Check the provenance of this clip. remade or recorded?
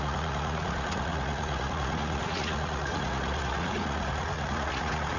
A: remade